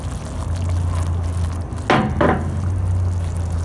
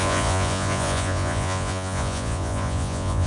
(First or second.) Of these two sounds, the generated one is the second